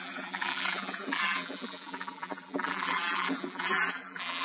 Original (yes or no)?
no